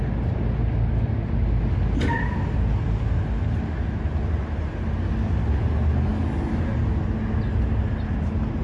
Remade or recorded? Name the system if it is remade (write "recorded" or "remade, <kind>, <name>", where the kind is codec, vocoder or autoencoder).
recorded